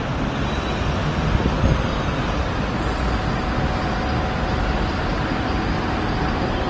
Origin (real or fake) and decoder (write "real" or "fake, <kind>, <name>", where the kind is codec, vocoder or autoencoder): real